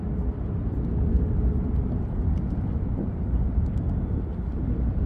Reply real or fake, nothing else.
real